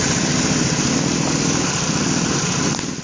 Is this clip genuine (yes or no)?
yes